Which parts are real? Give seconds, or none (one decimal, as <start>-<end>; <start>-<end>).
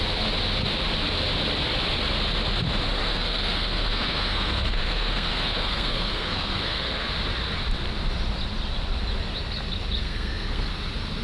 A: 0.0-3.0; 7.1-10.0; 10.7-11.2